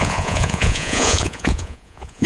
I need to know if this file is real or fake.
fake